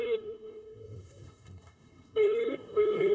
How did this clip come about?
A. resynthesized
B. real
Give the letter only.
A